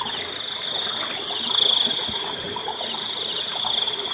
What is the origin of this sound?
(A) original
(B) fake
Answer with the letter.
A